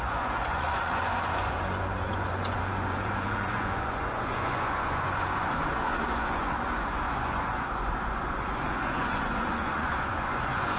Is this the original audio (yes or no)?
no